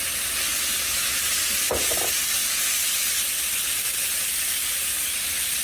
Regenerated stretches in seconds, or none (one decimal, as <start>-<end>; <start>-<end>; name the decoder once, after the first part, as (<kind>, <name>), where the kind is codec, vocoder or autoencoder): none